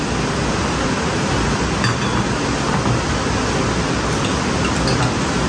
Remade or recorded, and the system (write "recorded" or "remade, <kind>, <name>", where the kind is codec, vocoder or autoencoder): recorded